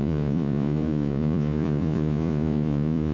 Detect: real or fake fake